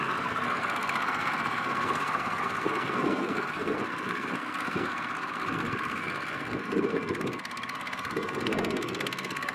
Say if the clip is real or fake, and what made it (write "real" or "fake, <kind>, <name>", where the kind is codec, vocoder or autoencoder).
fake, codec, SNAC